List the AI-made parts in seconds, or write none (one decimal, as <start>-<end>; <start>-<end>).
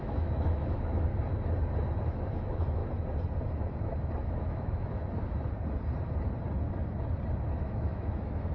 0.0-1.1; 2.0-2.8; 4.3-5.0; 7.6-8.5